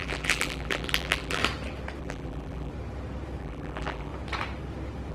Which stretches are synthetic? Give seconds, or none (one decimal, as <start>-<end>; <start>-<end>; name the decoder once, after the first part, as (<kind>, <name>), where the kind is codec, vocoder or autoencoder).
0.0-1.4 (vocoder, BigVGAN v2); 2.0-2.7; 3.4-4.1